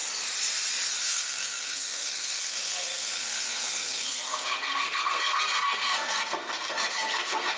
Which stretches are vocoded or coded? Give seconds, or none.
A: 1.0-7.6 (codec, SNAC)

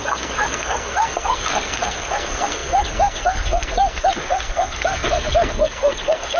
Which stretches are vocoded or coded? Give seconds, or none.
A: 0.0-6.4 (codec, SNAC)

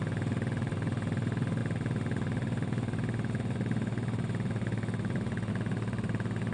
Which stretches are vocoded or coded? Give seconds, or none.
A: none

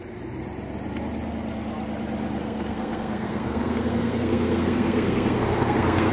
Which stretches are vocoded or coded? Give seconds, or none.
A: 2.4-6.1 (codec, SNAC)

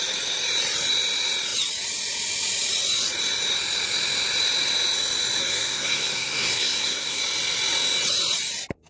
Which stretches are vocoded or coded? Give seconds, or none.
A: 5.4-7.2 (codec, SNAC)

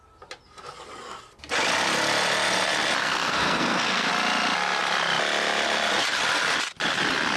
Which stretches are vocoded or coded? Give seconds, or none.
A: 3.0-4.1 (codec, SNAC)

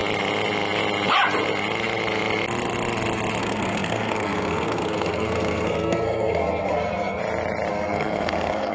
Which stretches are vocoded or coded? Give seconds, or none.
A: 3.4-7.2 (codec, SNAC); 7.7-8.7